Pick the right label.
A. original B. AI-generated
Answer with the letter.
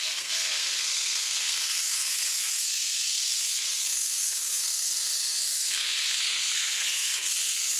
B